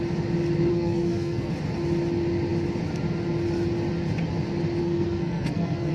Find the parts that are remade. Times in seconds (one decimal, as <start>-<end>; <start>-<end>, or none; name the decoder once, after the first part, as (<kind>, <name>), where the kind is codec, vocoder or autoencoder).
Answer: 0.7-1.5 (codec, SNAC); 4.8-5.9